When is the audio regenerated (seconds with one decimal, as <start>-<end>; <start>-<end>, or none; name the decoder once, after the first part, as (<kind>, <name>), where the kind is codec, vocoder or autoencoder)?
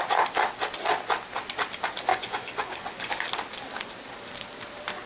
2.1-3.1 (vocoder, Vocos)